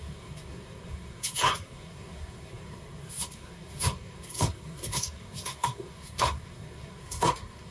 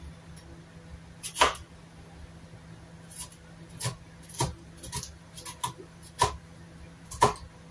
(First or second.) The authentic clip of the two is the second